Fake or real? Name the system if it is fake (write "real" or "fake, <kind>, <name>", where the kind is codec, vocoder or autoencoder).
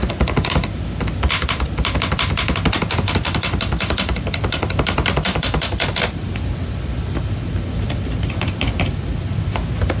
real